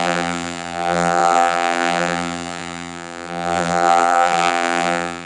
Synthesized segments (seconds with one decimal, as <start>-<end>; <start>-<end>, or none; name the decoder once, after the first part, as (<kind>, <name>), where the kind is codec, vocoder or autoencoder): 0.0-5.3 (vocoder, BigVGAN v2)